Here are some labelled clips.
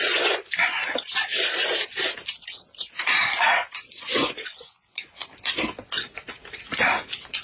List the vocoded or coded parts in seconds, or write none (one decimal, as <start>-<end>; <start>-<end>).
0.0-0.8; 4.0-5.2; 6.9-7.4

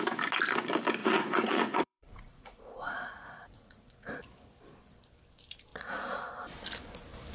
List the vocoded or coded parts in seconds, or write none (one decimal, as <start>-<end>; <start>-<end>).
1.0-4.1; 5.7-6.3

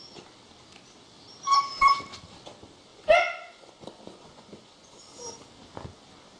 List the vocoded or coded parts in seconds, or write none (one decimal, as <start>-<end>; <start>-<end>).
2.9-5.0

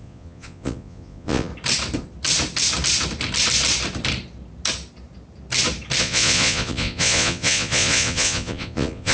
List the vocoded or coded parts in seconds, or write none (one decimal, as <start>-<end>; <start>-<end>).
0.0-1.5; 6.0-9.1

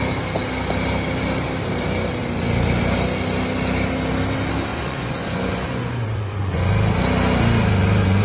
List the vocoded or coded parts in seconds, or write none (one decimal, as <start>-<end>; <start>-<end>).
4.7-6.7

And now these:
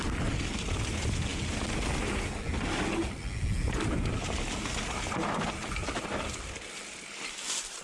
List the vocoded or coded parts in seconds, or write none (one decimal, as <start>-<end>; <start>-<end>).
none

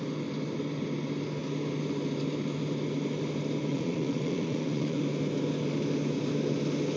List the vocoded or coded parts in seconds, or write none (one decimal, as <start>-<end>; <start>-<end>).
3.7-5.0